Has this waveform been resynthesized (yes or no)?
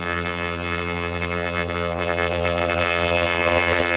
yes